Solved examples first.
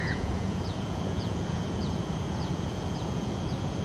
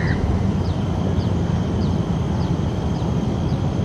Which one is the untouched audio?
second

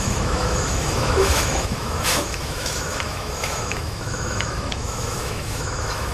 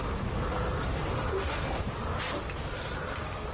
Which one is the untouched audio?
second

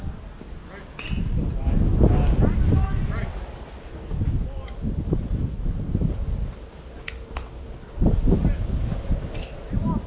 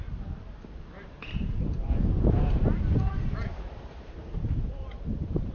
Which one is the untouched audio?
first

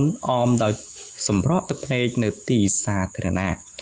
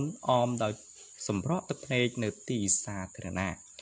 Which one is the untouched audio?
second